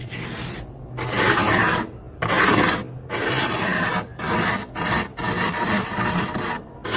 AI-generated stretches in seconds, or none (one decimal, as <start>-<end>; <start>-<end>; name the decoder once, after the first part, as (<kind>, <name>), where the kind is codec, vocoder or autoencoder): none